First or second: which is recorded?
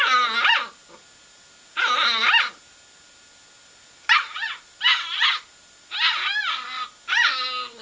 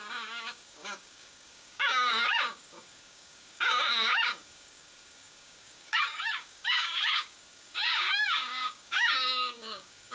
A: first